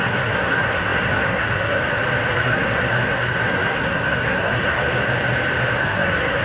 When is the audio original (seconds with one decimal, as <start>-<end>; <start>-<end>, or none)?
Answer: 1.8-2.3; 4.8-5.8